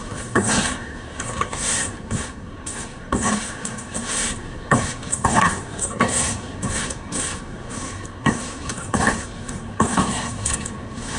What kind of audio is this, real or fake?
fake